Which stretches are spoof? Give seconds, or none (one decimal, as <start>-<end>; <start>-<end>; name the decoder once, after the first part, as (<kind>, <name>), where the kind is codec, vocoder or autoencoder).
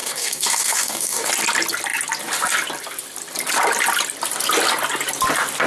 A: 0.0-1.3 (codec, DAC)